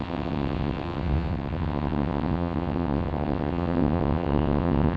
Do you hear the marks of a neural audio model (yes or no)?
yes